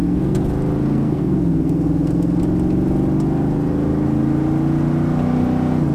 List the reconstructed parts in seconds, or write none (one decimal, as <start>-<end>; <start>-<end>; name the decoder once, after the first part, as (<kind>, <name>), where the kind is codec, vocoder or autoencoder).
0.0-0.5 (codec, SNAC); 0.9-2.4